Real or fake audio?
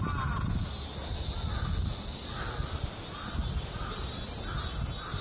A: real